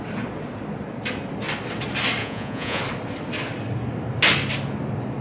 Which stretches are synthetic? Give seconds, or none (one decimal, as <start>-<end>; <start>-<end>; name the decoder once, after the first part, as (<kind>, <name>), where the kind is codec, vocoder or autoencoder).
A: 2.2-2.8 (vocoder, Vocos)